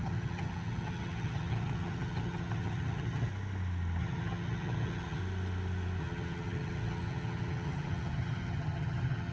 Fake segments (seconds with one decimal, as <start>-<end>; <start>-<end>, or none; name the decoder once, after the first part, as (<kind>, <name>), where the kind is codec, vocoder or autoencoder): 0.0-3.3 (vocoder, HiFi-GAN); 4.0-5.2; 6.0-9.3